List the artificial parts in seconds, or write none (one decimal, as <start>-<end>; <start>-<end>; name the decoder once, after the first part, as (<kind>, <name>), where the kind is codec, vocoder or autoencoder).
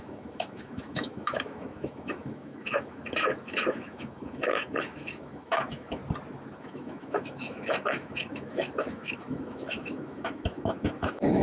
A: 0.0-6.0 (autoencoder, DAC-VAE); 6.6-11.4